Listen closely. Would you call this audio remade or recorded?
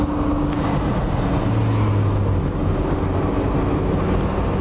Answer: recorded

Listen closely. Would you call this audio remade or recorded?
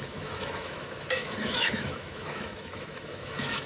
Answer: remade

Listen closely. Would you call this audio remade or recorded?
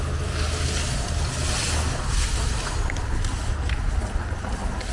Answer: recorded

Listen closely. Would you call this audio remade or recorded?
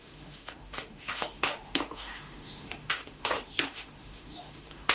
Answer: remade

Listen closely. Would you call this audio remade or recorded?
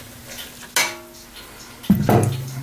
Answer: recorded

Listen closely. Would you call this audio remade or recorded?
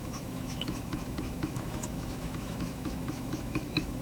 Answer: remade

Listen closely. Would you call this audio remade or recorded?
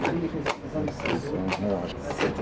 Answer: recorded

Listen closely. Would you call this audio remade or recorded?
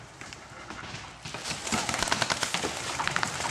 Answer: recorded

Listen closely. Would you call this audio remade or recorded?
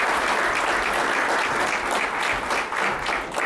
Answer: recorded